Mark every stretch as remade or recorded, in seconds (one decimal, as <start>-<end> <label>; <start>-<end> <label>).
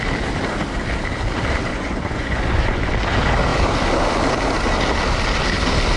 0.0-1.7 recorded; 1.7-2.9 remade; 2.9-6.0 recorded